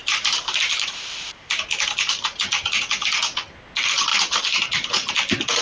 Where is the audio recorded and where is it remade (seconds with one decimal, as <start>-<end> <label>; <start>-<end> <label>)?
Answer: 0.0-1.5 remade; 1.5-4.1 recorded; 4.1-5.1 remade; 5.1-5.6 recorded